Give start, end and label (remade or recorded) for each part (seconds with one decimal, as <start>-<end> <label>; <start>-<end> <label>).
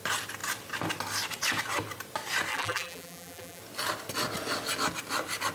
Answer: 0.0-2.5 recorded; 2.5-3.6 remade; 3.6-5.5 recorded